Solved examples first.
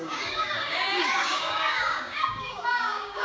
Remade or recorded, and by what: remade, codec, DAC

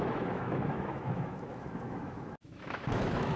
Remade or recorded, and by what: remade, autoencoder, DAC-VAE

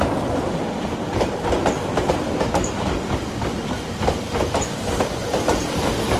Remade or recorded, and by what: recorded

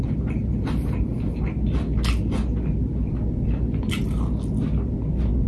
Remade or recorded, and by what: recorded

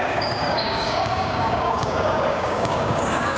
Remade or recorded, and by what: remade, codec, DAC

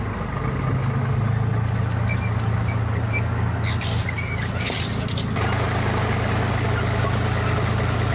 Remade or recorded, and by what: recorded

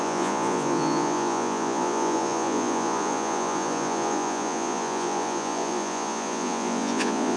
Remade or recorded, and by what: remade, vocoder, Vocos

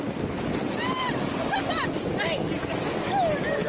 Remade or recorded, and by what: recorded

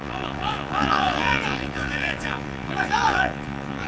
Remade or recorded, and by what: remade, vocoder, WaveNeXt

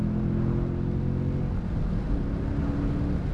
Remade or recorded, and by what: recorded